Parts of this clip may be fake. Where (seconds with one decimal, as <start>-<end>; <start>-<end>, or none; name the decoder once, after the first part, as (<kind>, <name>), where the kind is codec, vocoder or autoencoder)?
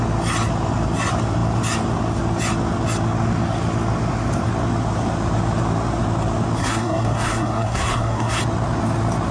6.6-8.4 (codec, SNAC)